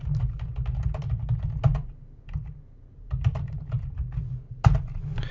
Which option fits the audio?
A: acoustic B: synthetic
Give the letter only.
A